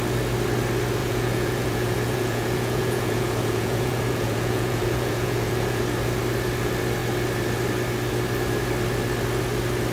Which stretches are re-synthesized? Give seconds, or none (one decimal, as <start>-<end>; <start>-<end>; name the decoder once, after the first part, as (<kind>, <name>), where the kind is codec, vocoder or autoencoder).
1.0-5.8 (vocoder, Vocos)